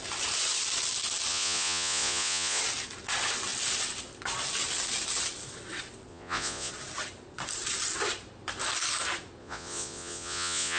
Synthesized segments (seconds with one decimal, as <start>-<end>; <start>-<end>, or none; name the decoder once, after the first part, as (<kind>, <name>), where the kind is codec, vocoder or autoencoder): 1.3-2.6 (vocoder, Vocos); 6.1-6.7; 9.4-10.8